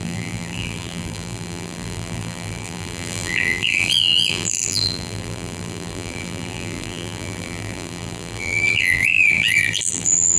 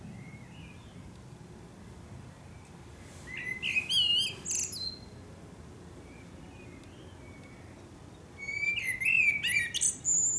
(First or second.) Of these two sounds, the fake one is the first